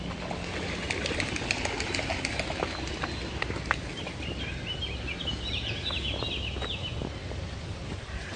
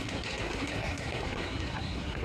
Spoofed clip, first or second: second